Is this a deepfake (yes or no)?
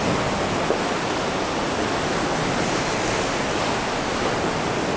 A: no